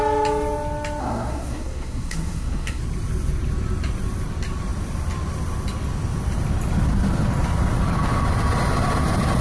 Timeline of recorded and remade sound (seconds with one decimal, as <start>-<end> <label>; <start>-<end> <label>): 0.0-1.0 recorded; 1.0-2.8 remade; 2.8-9.4 recorded